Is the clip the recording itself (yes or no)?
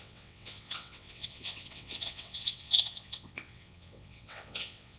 no